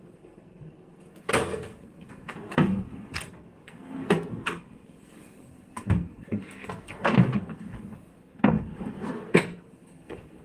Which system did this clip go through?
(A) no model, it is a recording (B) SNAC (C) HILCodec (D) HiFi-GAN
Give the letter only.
B